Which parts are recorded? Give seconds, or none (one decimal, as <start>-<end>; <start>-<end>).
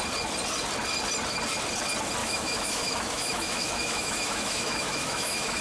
0.0-2.2